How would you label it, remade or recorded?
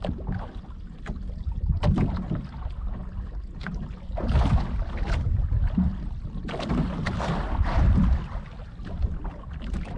recorded